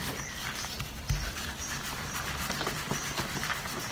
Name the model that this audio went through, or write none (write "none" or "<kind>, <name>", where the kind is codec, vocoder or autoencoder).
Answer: vocoder, BigVGAN v2